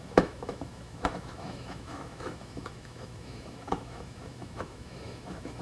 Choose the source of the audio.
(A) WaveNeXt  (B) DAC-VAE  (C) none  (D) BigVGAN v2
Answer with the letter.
B